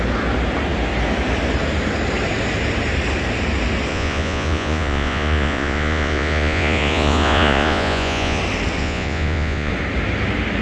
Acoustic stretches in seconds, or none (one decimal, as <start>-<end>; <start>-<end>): 0.0-3.9; 8.4-8.8; 9.7-10.6